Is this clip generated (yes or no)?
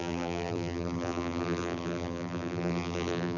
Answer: yes